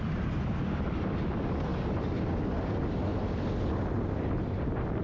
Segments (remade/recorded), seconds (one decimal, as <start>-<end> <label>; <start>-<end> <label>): 0.0-5.0 recorded

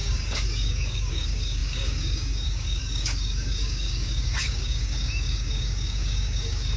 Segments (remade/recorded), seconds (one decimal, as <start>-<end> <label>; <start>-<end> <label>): 0.0-6.8 remade

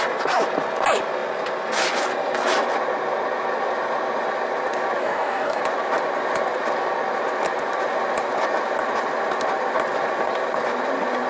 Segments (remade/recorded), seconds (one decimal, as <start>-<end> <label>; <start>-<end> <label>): 0.0-5.0 recorded; 5.0-5.6 remade; 5.6-11.3 recorded

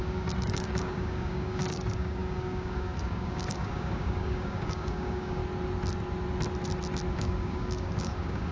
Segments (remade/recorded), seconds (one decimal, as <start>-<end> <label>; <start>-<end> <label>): 0.0-5.4 remade; 5.4-7.1 recorded; 7.1-8.5 remade

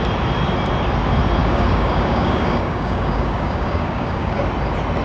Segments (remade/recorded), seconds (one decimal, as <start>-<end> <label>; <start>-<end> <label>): 0.0-1.4 recorded; 1.4-4.4 remade; 4.4-5.0 recorded

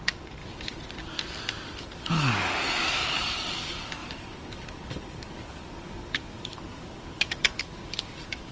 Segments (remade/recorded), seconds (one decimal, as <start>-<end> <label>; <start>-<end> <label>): 0.0-0.4 remade; 0.4-1.8 recorded; 1.8-8.5 remade

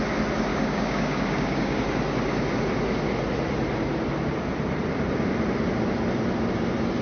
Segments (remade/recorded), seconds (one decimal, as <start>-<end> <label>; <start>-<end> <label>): 0.0-0.5 recorded; 0.5-1.8 remade; 1.8-7.0 recorded

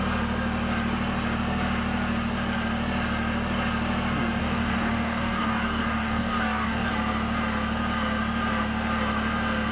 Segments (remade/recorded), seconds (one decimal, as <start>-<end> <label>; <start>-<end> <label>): 0.0-4.4 recorded; 4.4-6.9 remade; 6.9-9.7 recorded